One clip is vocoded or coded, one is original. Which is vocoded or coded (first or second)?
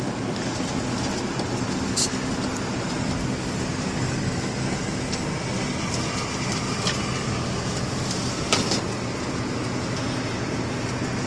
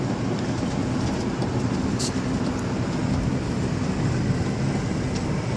second